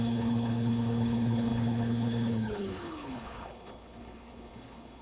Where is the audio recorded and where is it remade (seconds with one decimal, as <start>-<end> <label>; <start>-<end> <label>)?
0.0-5.0 remade